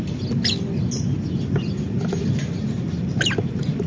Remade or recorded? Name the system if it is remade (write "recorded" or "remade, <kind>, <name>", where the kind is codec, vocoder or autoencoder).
recorded